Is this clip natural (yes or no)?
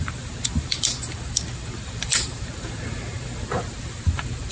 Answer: no